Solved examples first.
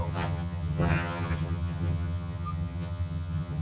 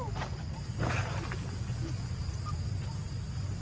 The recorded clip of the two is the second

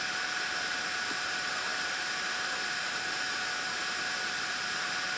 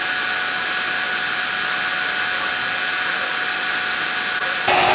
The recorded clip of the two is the second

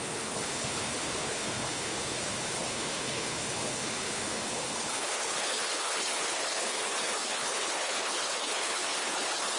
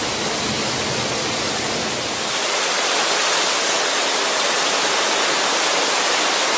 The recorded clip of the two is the second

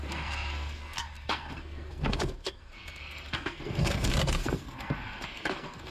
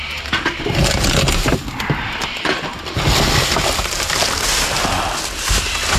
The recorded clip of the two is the second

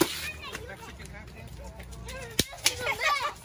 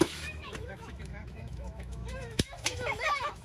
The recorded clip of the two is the first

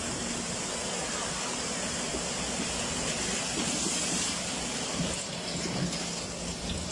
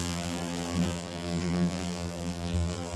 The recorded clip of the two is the first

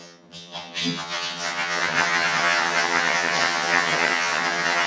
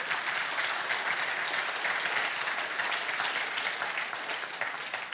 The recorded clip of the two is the second